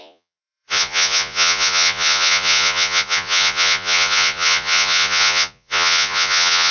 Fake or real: fake